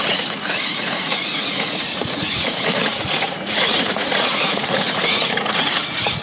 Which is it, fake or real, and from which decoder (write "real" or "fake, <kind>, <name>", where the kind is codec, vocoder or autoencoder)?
fake, vocoder, Vocos